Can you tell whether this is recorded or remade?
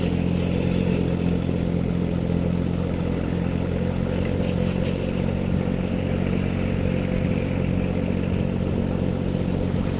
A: recorded